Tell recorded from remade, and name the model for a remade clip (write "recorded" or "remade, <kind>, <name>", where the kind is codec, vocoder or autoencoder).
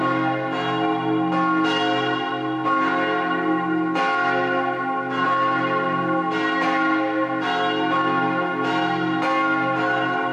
recorded